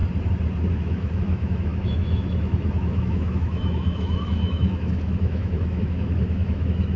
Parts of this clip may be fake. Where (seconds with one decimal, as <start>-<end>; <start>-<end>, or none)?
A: 0.7-7.0